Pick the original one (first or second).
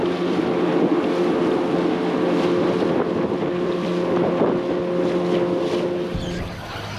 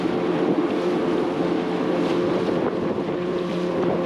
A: first